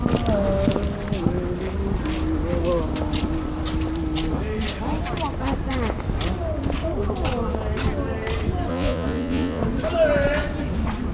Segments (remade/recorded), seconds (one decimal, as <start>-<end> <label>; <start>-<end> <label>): 0.0-8.7 recorded; 8.7-9.6 remade; 9.6-11.1 recorded